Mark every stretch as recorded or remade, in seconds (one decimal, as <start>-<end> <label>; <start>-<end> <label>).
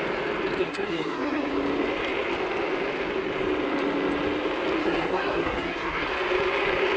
0.0-0.6 recorded; 0.6-1.5 remade; 1.5-4.8 recorded; 4.8-6.1 remade; 6.1-7.0 recorded